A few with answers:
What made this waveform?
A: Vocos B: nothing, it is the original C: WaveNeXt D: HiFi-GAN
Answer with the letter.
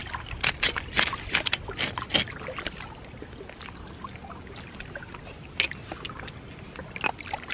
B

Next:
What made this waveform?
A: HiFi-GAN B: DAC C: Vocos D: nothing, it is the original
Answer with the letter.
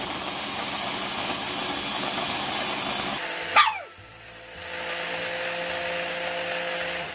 D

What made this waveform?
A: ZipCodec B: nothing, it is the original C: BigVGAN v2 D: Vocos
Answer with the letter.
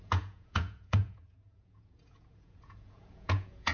D